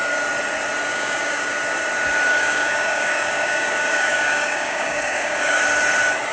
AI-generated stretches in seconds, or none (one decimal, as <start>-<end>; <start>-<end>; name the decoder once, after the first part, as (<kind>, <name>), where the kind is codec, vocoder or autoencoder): 0.9-1.5 (codec, DAC); 2.3-5.6